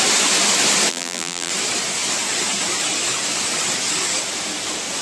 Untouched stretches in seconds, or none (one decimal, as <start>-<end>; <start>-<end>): 0.0-0.9; 1.5-5.0